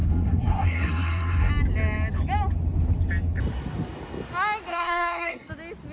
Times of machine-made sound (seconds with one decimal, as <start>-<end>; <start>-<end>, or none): 0.0-1.5; 4.7-5.5